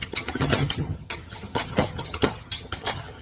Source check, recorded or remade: remade